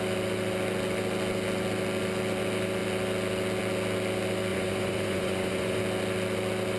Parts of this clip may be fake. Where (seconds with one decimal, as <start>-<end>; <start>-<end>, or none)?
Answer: 4.5-5.8